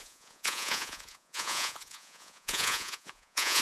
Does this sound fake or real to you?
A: fake